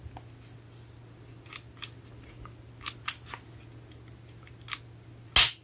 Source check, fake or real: real